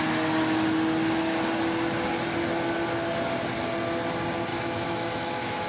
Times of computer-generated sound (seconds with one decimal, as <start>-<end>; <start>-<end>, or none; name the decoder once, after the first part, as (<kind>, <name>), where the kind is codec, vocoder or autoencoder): 4.5-5.7 (autoencoder, DAC-VAE)